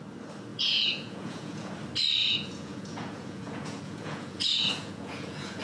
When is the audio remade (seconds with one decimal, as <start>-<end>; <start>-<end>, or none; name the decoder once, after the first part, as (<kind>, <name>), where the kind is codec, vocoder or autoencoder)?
0.5-1.7 (vocoder, Vocos); 2.2-5.6